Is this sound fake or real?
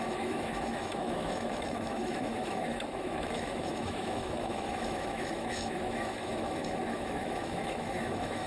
fake